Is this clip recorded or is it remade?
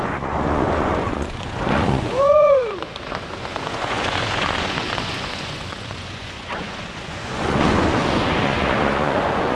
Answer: remade